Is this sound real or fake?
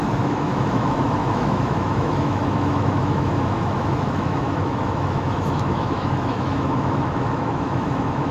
fake